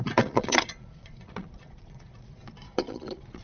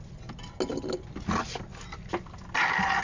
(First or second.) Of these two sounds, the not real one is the first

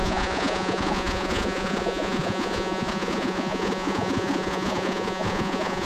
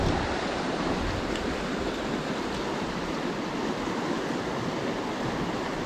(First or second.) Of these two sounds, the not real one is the first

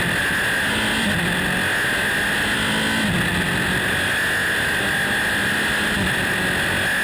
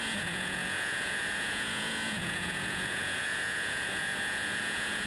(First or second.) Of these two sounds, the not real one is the second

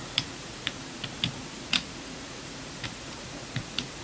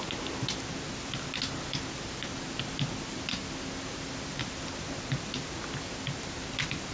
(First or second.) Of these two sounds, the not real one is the first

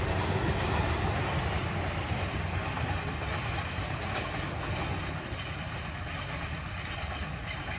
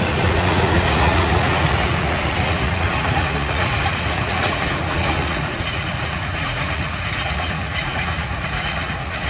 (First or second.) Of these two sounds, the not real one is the second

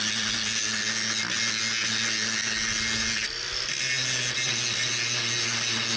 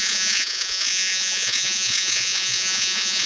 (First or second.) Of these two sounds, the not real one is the second